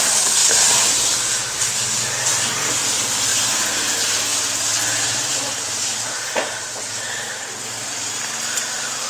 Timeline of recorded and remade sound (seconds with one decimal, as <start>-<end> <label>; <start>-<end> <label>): 0.0-3.3 recorded; 3.3-3.9 remade; 3.9-4.3 recorded; 4.3-8.1 remade; 8.1-9.1 recorded